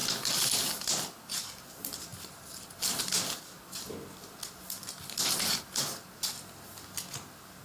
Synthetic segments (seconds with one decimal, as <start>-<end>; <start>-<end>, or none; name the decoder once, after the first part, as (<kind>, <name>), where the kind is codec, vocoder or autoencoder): none